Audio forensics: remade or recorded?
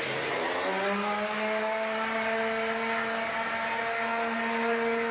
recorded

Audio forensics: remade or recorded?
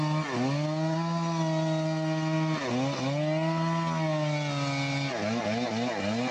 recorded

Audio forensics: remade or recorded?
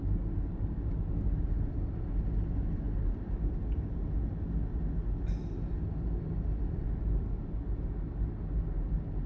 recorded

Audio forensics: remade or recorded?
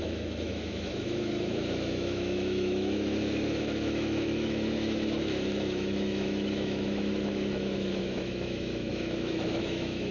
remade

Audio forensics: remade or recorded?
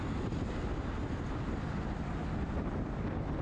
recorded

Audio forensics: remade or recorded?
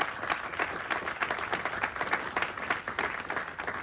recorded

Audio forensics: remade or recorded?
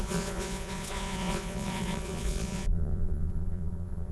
remade